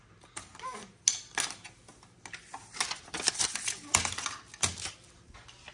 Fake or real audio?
real